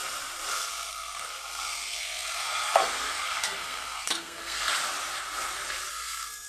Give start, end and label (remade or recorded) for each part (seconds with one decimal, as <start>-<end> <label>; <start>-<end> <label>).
0.0-0.5 recorded; 0.5-4.7 remade; 4.7-5.9 recorded; 5.9-6.5 remade